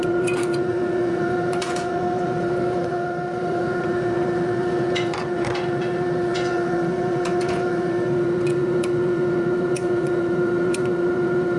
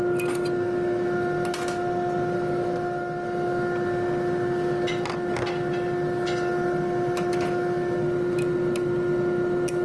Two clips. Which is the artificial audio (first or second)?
first